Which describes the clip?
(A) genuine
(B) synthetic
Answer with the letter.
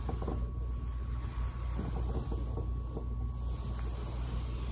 A